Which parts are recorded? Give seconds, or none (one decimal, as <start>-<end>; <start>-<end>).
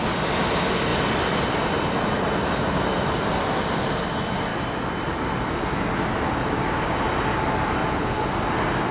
0.0-7.8; 8.3-8.9